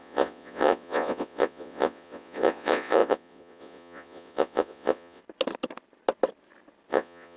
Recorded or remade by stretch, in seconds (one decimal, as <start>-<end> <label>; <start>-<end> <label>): 0.0-5.2 remade; 5.2-6.9 recorded; 6.9-7.4 remade